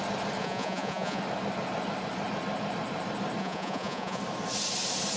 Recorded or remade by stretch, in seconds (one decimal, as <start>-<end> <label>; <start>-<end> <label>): 0.0-0.4 recorded; 0.4-1.2 remade; 1.2-3.4 recorded; 3.4-4.2 remade; 4.2-5.2 recorded